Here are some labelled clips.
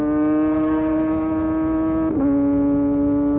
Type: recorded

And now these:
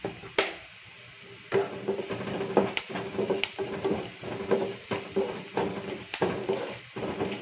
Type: recorded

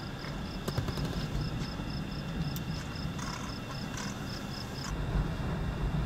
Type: recorded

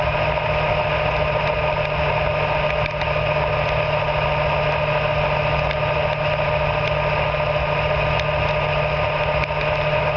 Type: recorded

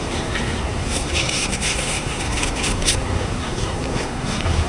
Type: remade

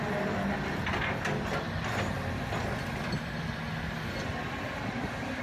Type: recorded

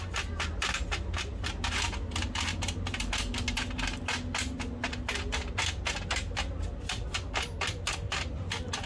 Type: recorded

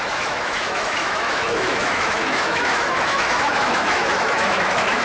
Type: remade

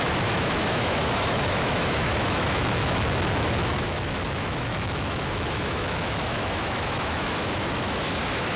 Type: remade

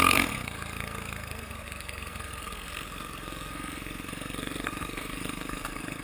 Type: remade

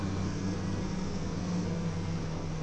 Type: remade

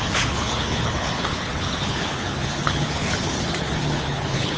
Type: remade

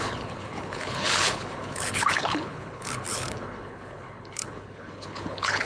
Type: remade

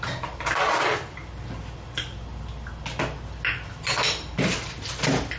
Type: recorded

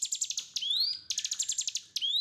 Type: recorded